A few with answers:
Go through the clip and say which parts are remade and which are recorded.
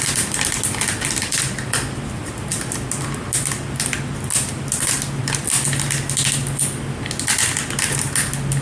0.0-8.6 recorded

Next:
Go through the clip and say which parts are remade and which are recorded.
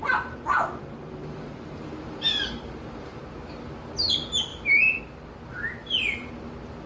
0.0-3.2 remade; 3.2-5.8 recorded; 5.8-6.3 remade; 6.3-6.9 recorded